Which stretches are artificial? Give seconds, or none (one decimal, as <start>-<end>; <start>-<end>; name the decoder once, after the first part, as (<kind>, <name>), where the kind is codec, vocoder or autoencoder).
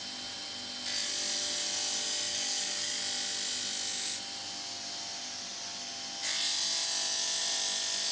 2.3-3.0 (codec, DAC)